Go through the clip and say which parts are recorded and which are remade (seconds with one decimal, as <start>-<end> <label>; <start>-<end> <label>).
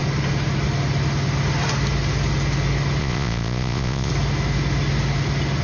0.0-3.0 recorded; 3.0-4.1 remade; 4.1-5.6 recorded